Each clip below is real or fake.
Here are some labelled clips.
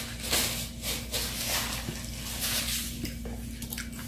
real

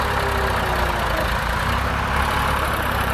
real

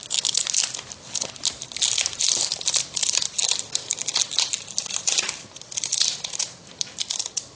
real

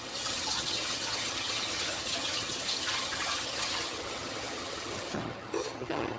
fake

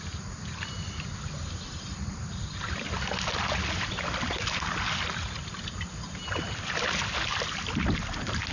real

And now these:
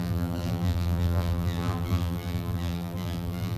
fake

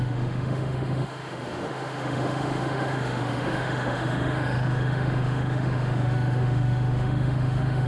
fake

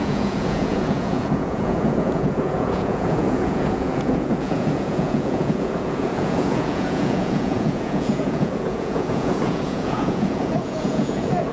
fake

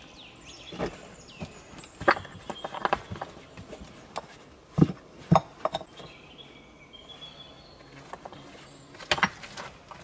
real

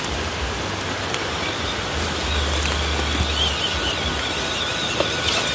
real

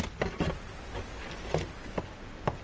real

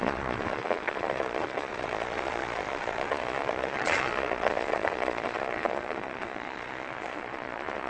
fake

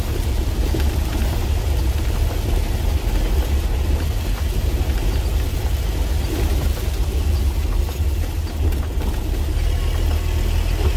real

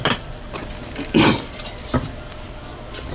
fake